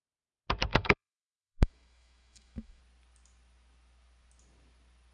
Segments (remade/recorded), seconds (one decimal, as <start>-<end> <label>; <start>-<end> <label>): 0.0-0.7 recorded; 0.7-2.8 remade; 2.8-5.1 recorded